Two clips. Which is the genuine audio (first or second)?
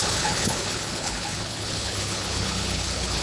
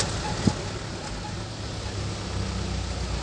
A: second